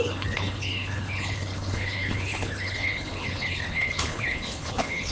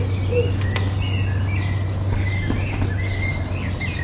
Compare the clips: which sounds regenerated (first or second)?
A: first